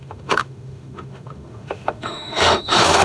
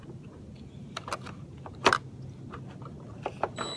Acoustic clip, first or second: second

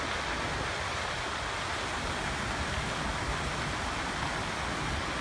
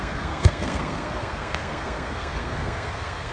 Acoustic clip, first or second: first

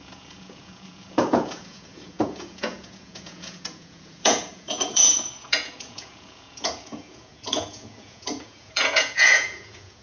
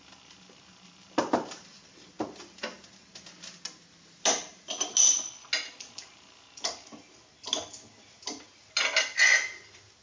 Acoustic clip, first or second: second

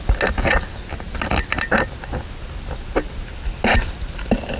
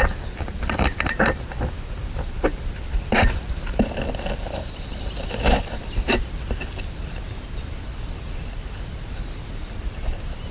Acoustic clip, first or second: first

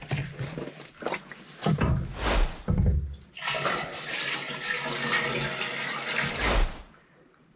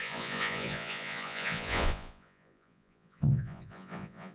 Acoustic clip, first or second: first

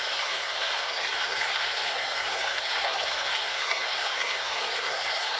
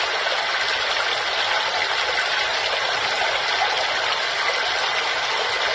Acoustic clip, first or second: second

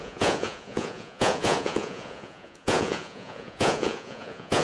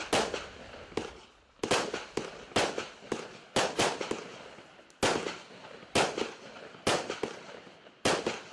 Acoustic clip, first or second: second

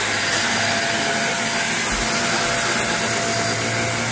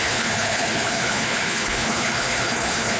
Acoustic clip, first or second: first